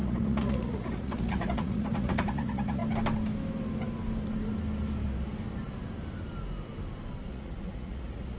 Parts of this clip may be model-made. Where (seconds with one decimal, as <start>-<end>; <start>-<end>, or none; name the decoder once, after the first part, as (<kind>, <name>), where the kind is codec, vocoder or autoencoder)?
0.0-2.8 (vocoder, Vocos); 7.3-8.4